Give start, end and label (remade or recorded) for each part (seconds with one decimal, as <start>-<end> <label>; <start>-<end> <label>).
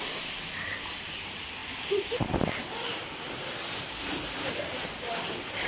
0.0-5.7 recorded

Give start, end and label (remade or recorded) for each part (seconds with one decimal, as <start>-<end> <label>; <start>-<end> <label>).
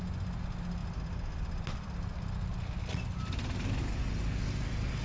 0.0-5.0 recorded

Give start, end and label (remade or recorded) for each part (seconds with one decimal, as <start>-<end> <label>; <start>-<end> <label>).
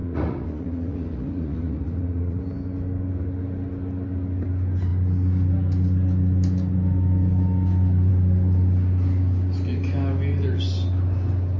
0.0-2.4 remade; 2.4-11.6 recorded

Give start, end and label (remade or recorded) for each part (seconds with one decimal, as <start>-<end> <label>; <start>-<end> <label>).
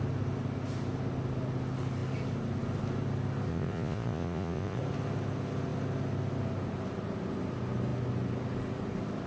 0.0-3.5 recorded; 3.5-4.8 remade; 4.8-9.3 recorded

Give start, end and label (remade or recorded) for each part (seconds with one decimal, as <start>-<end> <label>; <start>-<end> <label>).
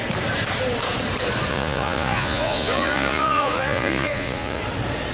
0.0-1.5 recorded; 1.5-4.6 remade; 4.6-5.1 recorded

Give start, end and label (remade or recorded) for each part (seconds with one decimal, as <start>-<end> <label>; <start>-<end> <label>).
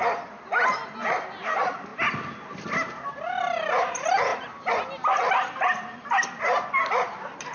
0.0-7.5 recorded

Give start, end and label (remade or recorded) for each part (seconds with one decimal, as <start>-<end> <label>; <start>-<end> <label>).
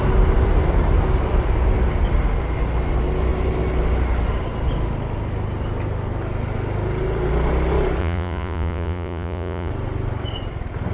0.0-8.0 recorded; 8.0-9.7 remade; 9.7-10.9 recorded